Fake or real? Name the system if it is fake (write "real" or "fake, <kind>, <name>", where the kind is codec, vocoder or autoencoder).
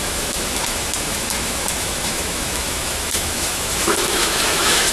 fake, autoencoder, DAC-VAE